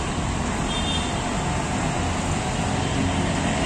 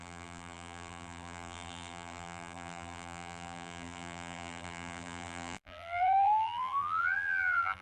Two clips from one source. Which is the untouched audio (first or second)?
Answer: first